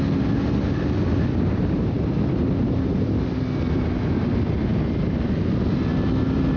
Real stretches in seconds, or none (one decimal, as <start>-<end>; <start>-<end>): 0.0-6.6